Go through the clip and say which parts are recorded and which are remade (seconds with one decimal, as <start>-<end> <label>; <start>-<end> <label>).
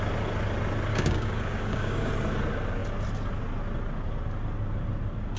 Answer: 0.0-0.9 recorded; 0.9-2.1 remade; 2.1-5.4 recorded